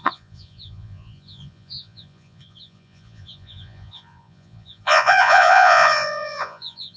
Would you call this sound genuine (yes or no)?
no